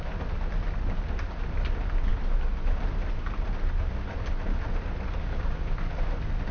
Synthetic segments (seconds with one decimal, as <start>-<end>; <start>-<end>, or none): none